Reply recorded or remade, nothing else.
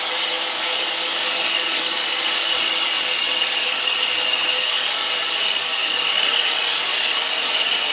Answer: remade